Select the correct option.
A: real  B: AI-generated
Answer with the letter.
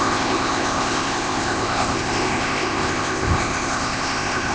B